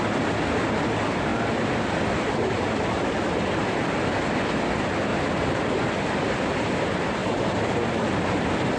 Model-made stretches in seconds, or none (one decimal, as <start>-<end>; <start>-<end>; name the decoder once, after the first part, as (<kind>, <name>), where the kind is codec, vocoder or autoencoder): 5.1-5.8 (vocoder, BigVGAN v2)